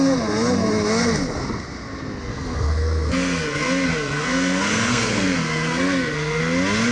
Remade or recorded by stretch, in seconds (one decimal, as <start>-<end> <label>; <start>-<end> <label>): 0.0-2.3 recorded; 2.3-6.4 remade; 6.4-6.9 recorded